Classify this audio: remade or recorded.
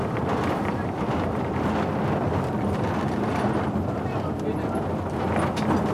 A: recorded